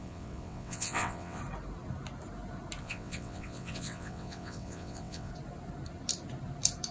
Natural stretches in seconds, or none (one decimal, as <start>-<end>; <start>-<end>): 1.4-2.8; 5.3-6.9